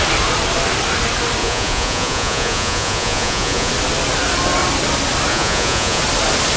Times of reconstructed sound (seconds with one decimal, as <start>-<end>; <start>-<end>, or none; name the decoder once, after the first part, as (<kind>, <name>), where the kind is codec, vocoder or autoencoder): 1.4-3.7 (vocoder, Vocos); 5.3-6.0